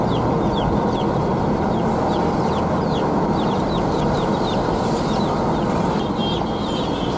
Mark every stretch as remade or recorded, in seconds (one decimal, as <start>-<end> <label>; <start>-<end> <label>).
0.0-7.2 recorded